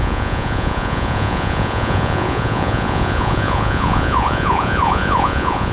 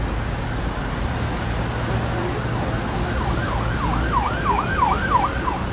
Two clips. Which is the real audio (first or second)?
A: second